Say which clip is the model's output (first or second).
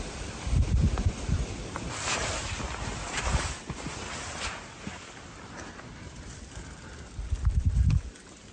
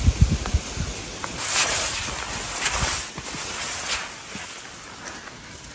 first